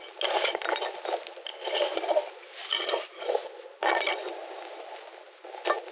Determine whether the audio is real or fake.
real